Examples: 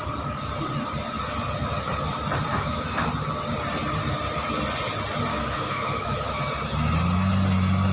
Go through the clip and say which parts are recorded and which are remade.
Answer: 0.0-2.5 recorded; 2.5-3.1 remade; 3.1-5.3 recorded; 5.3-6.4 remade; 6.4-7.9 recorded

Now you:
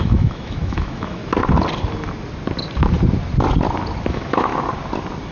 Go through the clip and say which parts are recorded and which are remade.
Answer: 0.0-1.2 remade; 1.2-4.1 recorded; 4.1-4.5 remade; 4.5-5.3 recorded

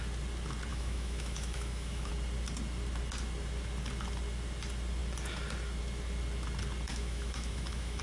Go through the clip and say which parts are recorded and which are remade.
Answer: 0.0-0.7 recorded; 0.7-2.1 remade; 2.1-6.9 recorded; 6.9-8.0 remade